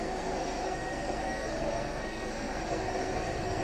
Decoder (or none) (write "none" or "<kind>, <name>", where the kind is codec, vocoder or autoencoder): codec, SNAC